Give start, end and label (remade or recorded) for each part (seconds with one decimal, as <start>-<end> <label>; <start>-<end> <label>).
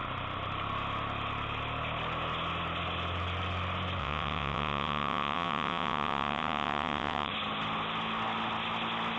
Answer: 0.0-4.0 recorded; 4.0-7.3 remade; 7.3-9.2 recorded